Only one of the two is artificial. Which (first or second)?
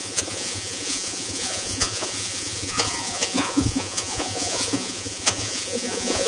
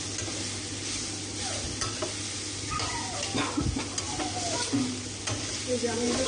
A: first